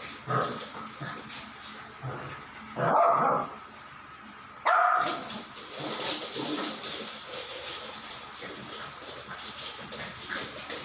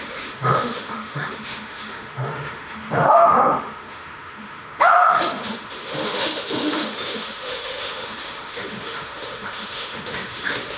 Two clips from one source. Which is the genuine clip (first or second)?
first